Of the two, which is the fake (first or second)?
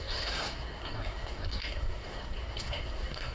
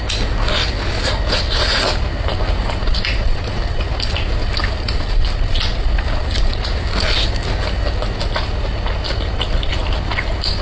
first